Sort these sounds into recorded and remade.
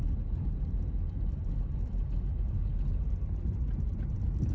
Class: recorded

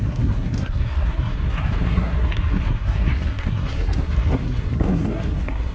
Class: remade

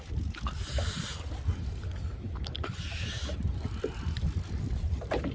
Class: recorded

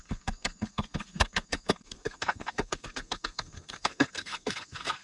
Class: remade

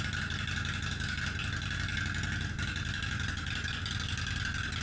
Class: recorded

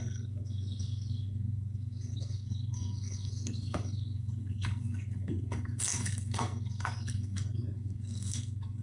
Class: remade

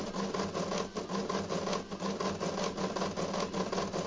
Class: recorded